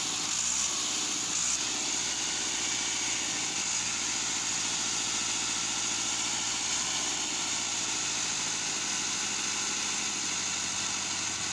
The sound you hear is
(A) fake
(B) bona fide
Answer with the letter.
B